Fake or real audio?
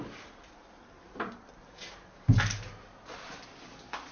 real